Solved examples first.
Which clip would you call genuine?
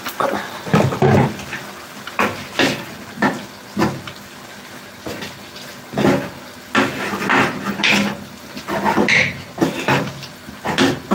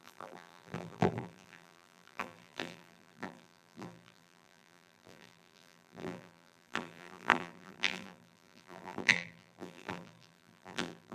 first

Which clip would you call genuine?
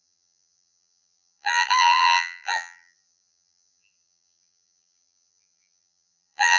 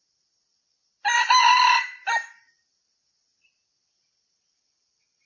second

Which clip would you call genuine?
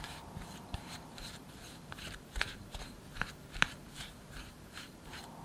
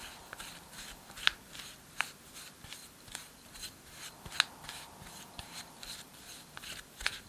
second